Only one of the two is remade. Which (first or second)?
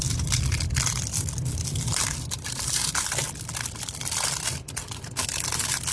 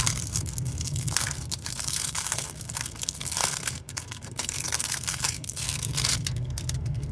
second